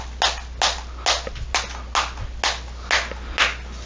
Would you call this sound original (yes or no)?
yes